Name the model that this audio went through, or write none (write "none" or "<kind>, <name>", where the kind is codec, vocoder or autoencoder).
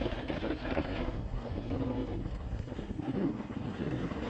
codec, SNAC